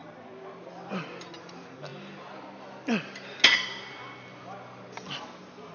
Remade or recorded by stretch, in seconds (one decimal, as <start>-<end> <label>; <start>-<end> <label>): 0.0-5.7 recorded